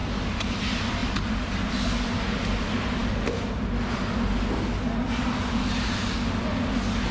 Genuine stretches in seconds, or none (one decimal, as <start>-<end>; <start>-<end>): 0.5-1.0; 1.7-7.1